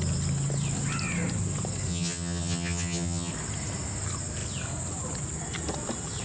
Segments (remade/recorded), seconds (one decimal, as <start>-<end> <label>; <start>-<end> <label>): 0.0-1.9 recorded; 1.9-3.3 remade; 3.3-6.2 recorded